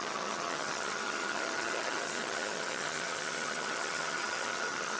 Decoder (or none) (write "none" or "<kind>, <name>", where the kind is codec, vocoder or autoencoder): vocoder, HiFi-GAN